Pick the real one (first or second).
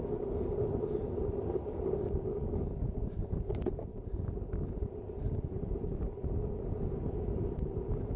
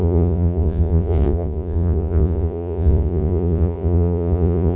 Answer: first